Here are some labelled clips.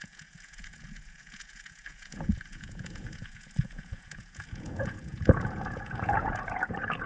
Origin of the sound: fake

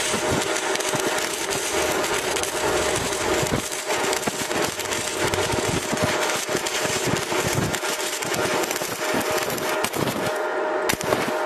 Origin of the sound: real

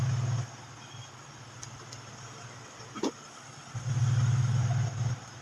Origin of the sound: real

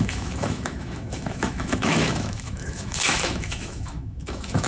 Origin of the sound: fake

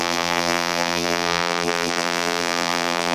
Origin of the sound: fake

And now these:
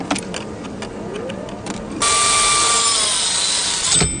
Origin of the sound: real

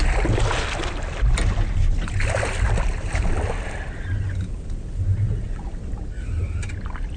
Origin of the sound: real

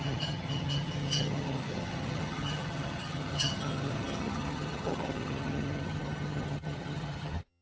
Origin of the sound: fake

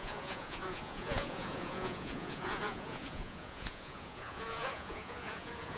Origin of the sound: fake